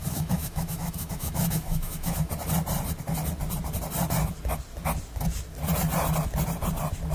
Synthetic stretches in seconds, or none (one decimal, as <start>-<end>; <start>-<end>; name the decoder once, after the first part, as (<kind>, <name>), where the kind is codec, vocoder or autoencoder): 0.0-2.3 (autoencoder, DAC-VAE)